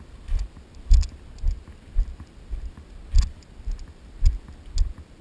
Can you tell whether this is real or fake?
real